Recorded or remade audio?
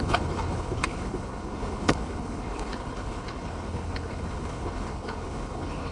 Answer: remade